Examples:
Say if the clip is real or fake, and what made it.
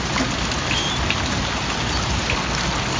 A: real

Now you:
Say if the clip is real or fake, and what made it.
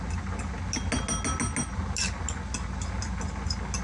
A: real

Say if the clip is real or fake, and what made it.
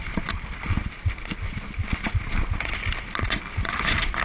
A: real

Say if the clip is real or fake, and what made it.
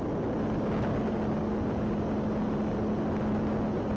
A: real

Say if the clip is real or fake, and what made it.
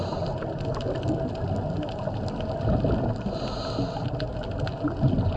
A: real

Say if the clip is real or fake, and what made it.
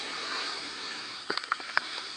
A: fake, codec, SNAC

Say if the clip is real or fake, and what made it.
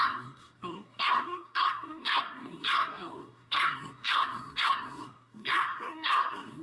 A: fake, codec, SNAC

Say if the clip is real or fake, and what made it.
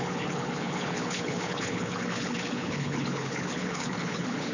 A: fake, codec, HILCodec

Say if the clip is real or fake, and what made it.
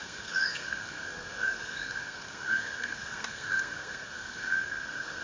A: fake, codec, SNAC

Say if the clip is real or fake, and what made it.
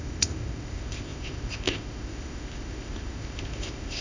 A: fake, codec, ZipCodec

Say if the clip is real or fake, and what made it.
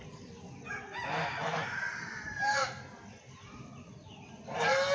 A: real